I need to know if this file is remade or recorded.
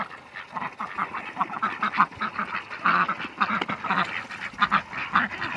recorded